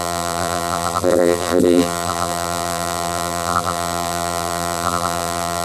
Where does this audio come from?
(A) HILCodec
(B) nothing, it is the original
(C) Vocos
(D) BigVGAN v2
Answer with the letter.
D